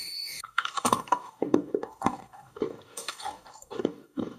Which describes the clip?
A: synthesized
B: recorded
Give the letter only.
A